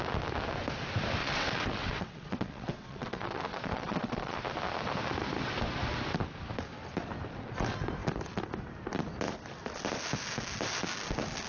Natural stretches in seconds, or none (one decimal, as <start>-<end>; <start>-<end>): 0.0-1.2; 4.4-11.5

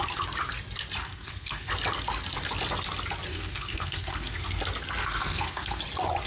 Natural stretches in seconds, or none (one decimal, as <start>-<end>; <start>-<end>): 0.0-1.0; 1.7-3.3; 4.6-5.0; 5.8-6.3